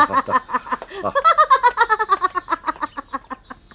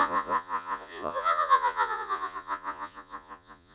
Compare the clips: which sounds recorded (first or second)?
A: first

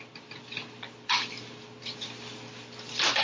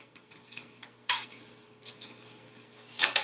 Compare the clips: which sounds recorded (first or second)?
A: first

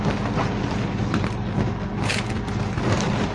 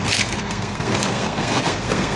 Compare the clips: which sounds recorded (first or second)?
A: first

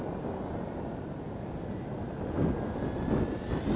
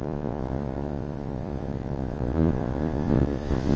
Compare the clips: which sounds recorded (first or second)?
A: first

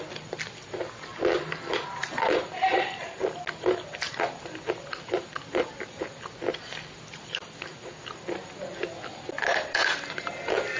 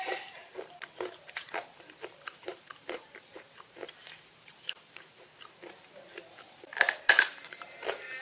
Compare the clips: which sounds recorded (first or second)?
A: first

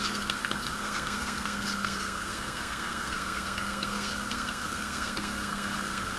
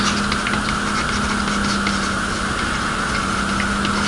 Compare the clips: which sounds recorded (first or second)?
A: second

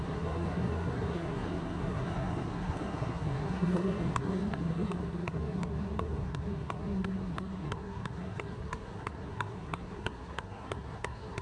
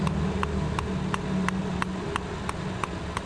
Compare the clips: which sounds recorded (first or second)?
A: second